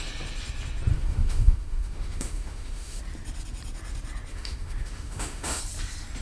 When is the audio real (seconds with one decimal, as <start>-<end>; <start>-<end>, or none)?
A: 0.0-0.9; 3.0-4.3; 5.6-6.2